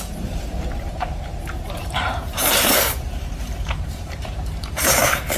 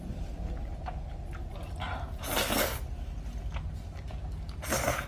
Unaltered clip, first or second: second